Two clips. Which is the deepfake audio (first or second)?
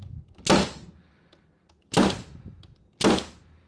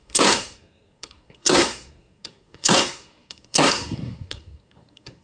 second